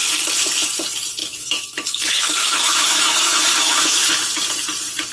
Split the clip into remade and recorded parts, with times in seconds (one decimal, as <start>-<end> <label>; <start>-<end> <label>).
0.0-1.2 recorded; 1.2-4.1 remade; 4.1-5.1 recorded

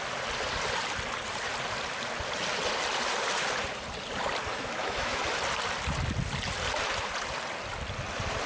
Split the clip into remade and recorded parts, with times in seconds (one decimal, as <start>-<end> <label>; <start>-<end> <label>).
0.0-4.5 recorded; 4.5-5.2 remade; 5.2-8.5 recorded

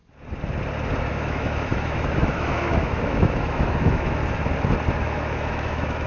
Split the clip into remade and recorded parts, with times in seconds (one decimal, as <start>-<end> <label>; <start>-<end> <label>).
0.0-1.1 recorded; 1.1-4.2 remade; 4.2-5.0 recorded; 5.0-6.1 remade